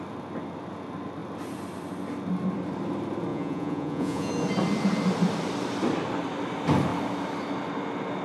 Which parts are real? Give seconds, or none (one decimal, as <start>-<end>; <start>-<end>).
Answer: 0.0-3.3; 4.3-8.2